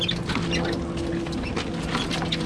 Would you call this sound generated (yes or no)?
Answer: no